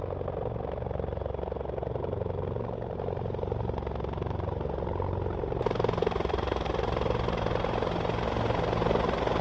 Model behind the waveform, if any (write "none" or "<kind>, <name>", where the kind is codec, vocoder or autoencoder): none